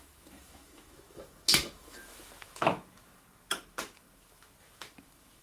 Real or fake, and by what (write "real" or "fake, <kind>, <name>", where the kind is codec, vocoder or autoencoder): fake, autoencoder, DAC-VAE